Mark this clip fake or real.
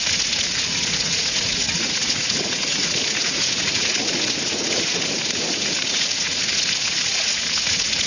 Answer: fake